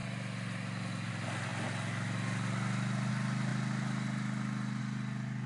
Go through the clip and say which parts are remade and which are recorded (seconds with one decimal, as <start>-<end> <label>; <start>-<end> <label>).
0.0-5.5 recorded